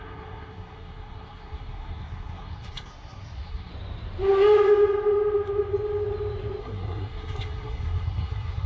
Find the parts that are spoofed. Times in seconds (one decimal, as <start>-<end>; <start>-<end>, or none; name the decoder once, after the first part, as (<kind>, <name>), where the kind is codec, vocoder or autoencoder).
0.0-3.7 (codec, SNAC); 6.6-8.7